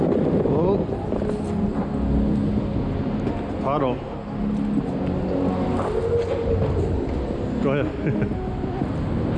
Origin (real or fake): real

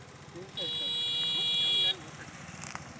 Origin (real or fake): real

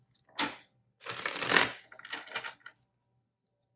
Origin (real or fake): real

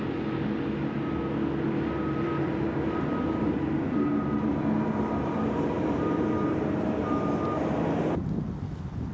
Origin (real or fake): real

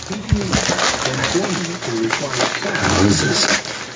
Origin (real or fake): real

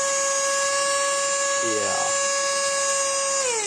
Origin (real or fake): real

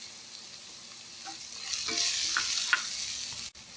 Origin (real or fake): real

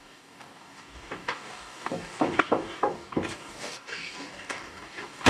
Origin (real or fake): fake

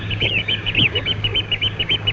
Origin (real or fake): fake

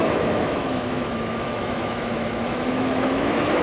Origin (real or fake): fake